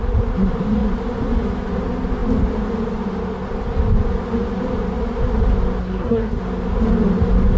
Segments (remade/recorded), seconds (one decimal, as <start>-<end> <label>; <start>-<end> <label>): 0.0-5.8 recorded; 5.8-6.4 remade; 6.4-7.6 recorded